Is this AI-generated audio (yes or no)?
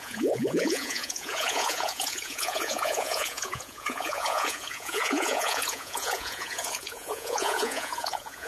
yes